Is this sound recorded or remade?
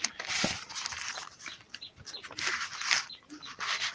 recorded